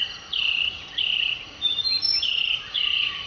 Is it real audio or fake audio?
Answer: fake